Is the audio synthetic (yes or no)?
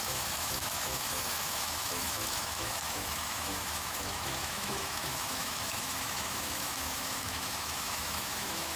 yes